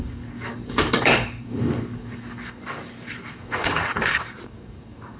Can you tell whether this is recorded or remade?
remade